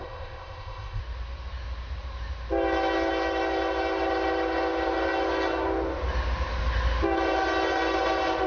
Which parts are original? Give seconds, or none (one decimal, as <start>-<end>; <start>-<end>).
1.0-8.5